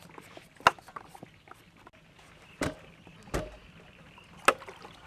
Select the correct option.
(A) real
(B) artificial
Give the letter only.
A